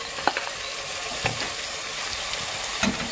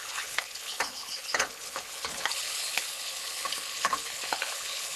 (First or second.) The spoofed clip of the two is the second